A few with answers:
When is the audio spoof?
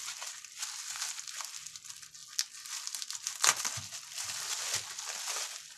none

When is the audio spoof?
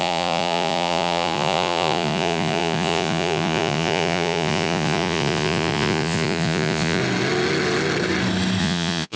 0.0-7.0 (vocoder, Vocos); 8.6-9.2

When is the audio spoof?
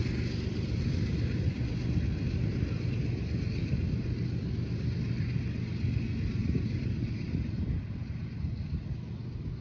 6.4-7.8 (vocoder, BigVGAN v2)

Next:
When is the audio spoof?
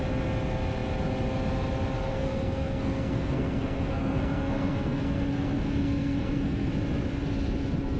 2.1-6.7 (codec, SNAC)